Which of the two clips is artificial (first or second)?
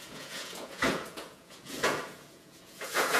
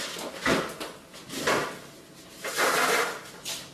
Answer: first